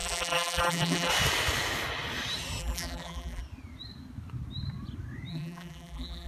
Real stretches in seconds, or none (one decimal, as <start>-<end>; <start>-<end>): 1.1-2.6; 3.4-5.3